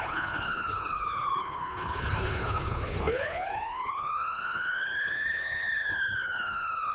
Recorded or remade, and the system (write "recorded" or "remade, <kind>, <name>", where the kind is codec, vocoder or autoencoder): remade, codec, HILCodec